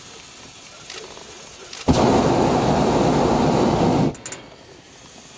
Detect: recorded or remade recorded